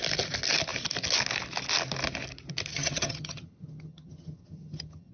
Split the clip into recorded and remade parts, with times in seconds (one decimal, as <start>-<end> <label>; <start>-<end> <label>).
0.0-2.7 recorded; 2.7-5.1 remade